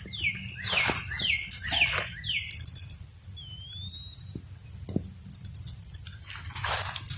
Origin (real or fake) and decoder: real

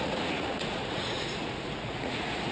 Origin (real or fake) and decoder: fake, vocoder, Vocos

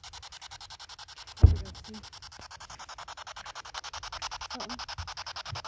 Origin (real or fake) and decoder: real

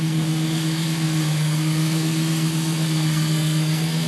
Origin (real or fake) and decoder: fake, codec, SNAC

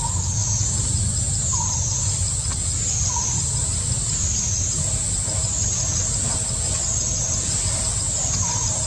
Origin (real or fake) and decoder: real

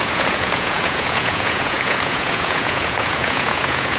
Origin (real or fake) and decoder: fake, vocoder, Vocos